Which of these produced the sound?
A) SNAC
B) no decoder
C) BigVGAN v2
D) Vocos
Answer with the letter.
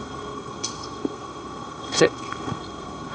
A